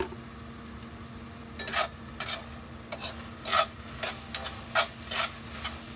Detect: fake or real real